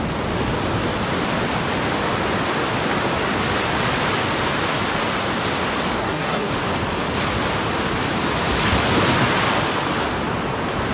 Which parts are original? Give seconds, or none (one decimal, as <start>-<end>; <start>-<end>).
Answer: 0.0-6.0; 6.5-10.9